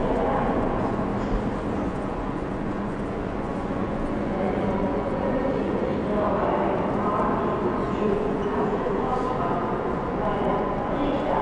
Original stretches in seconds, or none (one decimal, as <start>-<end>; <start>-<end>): 1.1-1.8; 5.9-7.7